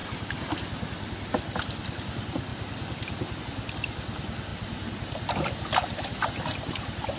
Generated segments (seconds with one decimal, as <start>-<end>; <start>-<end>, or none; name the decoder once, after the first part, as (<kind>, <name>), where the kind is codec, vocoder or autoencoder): none